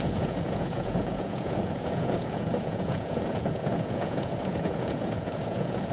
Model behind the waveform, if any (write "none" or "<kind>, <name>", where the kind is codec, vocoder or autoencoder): vocoder, Vocos